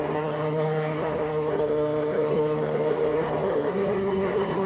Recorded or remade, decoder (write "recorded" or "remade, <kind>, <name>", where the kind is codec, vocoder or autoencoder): remade, codec, SNAC